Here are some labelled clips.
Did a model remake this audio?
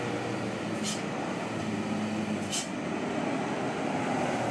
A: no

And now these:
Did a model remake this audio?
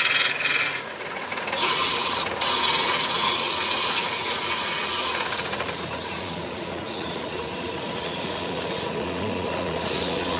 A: yes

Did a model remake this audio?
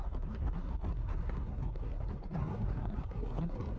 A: yes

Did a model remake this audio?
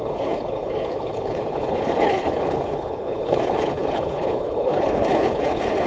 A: yes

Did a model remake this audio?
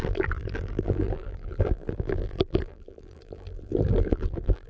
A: yes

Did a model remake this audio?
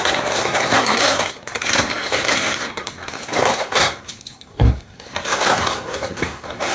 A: yes